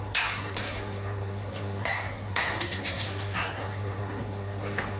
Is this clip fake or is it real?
fake